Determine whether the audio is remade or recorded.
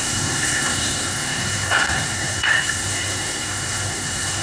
remade